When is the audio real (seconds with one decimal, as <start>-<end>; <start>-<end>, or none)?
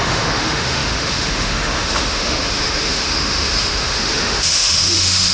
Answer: none